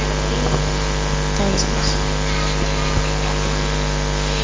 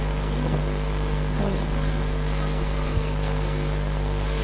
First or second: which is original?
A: first